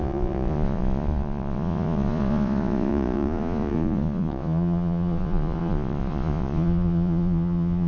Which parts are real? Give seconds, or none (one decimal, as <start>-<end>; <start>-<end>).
none